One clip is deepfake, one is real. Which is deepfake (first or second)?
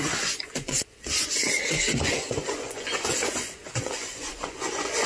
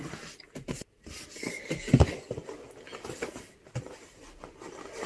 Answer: first